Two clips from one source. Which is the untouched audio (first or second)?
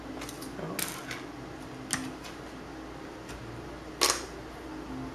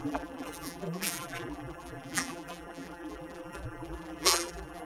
first